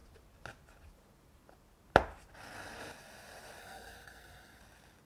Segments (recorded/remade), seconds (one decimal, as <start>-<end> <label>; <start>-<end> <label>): 0.0-3.6 recorded; 3.6-4.6 remade; 4.6-5.0 recorded